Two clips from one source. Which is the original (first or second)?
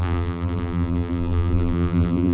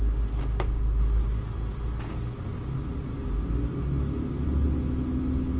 second